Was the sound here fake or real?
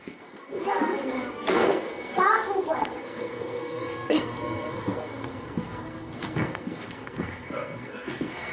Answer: fake